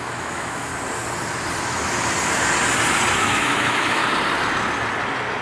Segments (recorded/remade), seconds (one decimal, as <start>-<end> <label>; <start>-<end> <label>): 0.0-0.7 remade; 0.7-3.2 recorded; 3.2-4.0 remade; 4.0-5.4 recorded